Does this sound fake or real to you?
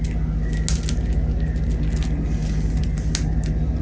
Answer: real